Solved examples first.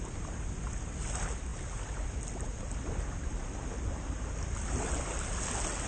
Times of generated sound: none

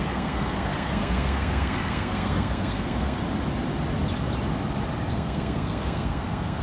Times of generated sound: 0.0-3.2 (codec, SNAC); 5.1-6.6

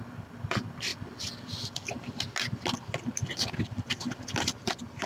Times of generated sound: none

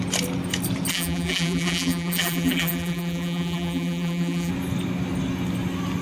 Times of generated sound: 0.9-4.5 (vocoder, BigVGAN v2)

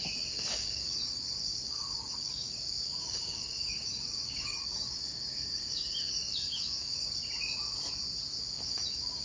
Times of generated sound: 0.0-7.2 (codec, DAC); 8.4-9.2

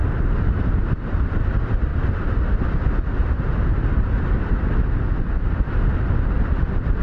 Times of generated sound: 0.0-0.5 (vocoder, BigVGAN v2); 1.9-2.6; 3.2-4.8